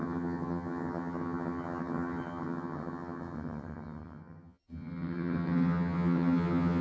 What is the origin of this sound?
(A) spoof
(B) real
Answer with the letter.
A